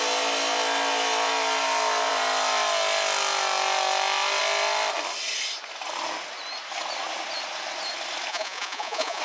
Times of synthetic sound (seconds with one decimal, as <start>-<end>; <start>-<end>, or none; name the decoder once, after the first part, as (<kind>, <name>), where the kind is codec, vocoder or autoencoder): 8.3-9.2 (vocoder, Vocos)